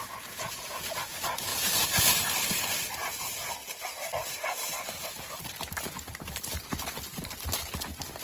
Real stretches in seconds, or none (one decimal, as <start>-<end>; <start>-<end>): 0.0-8.2